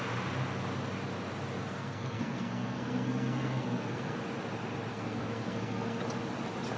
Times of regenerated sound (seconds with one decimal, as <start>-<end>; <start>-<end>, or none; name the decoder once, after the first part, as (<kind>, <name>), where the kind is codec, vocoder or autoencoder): 1.6-4.2 (codec, SNAC); 4.9-6.0